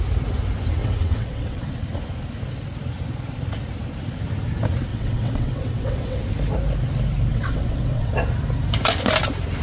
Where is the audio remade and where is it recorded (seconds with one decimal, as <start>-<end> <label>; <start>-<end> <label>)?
0.0-0.8 recorded; 0.8-1.7 remade; 1.7-4.9 recorded; 4.9-6.2 remade; 6.2-7.3 recorded; 7.3-8.1 remade; 8.1-9.6 recorded